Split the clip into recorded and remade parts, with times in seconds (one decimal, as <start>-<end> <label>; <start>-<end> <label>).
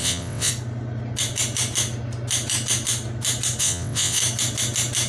0.0-0.5 remade; 0.5-3.6 recorded; 3.6-4.2 remade; 4.2-5.1 recorded